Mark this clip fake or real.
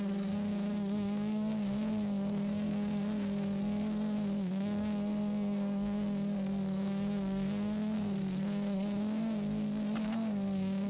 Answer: fake